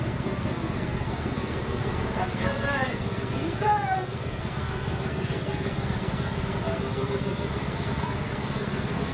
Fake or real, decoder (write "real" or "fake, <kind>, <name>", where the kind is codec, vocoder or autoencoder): fake, codec, SNAC